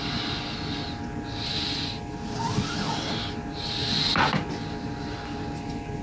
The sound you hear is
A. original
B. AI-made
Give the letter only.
A